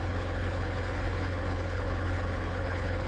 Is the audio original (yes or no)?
no